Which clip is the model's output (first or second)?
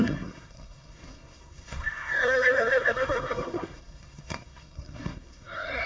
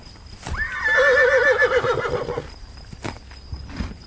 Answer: first